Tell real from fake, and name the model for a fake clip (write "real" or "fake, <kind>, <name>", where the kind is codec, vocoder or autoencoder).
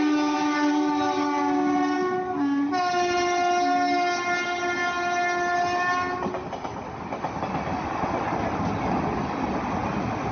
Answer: real